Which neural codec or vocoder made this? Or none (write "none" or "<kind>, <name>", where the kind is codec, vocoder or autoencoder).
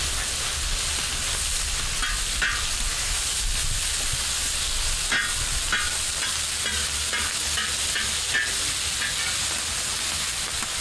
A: none